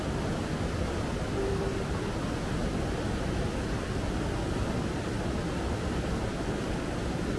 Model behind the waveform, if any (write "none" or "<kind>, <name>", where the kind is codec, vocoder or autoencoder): none